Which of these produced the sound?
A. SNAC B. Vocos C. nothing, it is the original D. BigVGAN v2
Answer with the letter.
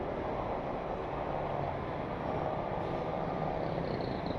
C